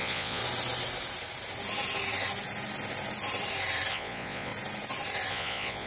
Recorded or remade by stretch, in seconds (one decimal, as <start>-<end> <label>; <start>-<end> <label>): 0.0-0.4 remade; 0.4-3.9 recorded; 3.9-4.5 remade; 4.5-5.3 recorded; 5.3-5.9 remade

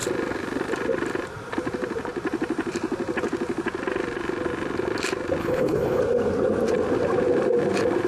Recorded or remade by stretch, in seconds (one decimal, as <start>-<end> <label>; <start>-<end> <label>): 0.0-5.4 recorded; 5.4-6.0 remade; 6.0-8.1 recorded

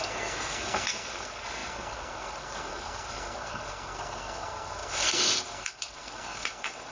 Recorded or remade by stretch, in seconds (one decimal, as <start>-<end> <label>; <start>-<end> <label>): 0.0-6.9 remade

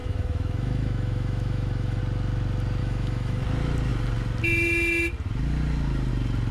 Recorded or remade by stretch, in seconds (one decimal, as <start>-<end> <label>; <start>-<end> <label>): 0.0-2.0 remade; 2.0-2.8 recorded; 2.8-3.4 remade; 3.4-6.5 recorded

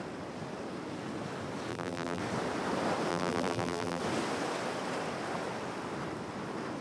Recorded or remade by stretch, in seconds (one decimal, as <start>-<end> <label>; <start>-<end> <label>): 0.0-1.7 recorded; 1.7-2.2 remade; 2.2-3.1 recorded; 3.1-4.0 remade; 4.0-6.8 recorded